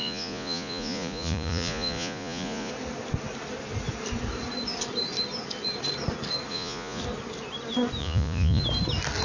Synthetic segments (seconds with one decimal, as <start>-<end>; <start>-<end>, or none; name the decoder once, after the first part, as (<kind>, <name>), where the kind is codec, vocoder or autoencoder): 0.0-2.7 (vocoder, Vocos); 6.5-7.0; 8.0-8.6